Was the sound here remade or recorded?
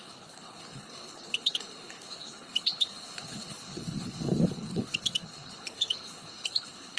remade